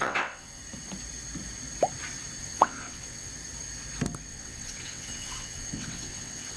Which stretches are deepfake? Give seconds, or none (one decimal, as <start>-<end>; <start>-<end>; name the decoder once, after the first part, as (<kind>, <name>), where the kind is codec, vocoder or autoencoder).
0.0-0.6 (vocoder, WaveNeXt); 2.4-3.3; 4.3-6.6